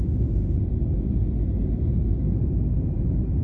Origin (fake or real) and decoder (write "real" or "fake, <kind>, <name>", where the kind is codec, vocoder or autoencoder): real